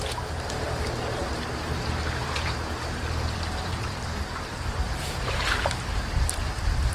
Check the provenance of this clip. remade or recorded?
remade